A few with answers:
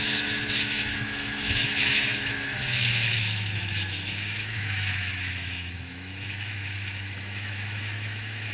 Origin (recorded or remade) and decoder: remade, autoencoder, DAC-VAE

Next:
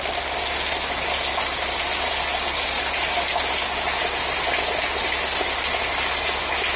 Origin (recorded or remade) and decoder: recorded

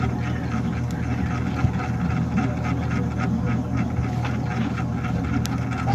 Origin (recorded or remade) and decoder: recorded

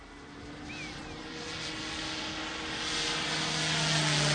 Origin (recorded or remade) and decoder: recorded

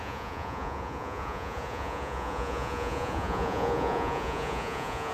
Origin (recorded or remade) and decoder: remade, vocoder, Vocos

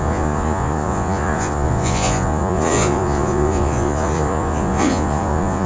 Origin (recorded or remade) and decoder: remade, vocoder, Vocos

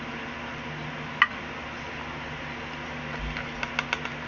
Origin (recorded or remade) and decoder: recorded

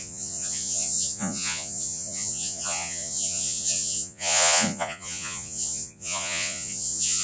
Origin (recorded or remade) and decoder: remade, vocoder, Vocos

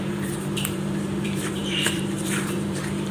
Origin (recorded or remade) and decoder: remade, vocoder, BigVGAN v2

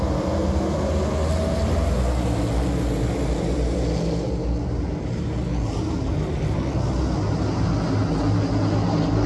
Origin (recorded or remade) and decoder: recorded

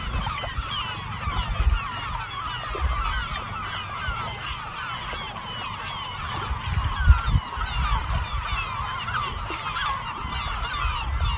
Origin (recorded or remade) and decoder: recorded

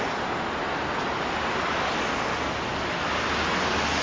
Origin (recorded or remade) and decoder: recorded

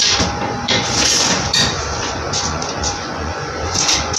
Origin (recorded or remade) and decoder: remade, vocoder, Vocos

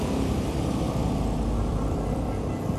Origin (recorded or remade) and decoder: remade, vocoder, BigVGAN v2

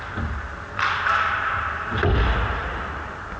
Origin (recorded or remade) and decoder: recorded